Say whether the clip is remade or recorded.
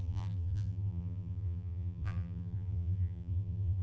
remade